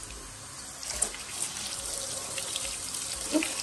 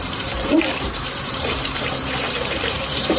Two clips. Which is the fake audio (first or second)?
second